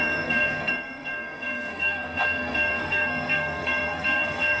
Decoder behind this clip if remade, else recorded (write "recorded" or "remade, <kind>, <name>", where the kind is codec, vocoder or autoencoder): remade, codec, SNAC